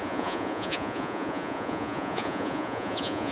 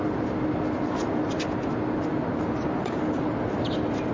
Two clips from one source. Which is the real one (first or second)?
second